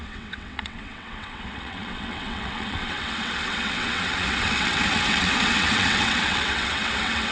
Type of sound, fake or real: fake